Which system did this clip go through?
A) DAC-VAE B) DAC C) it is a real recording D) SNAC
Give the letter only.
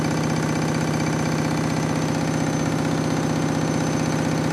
C